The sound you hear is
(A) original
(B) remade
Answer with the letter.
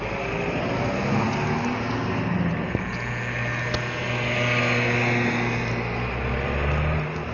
A